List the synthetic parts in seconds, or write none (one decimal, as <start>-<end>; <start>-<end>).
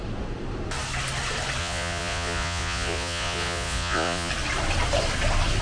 1.6-4.3